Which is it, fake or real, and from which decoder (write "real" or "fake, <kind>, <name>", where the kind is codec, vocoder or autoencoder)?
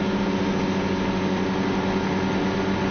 real